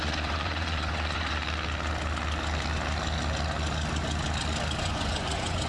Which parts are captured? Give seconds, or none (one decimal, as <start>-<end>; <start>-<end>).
1.4-4.8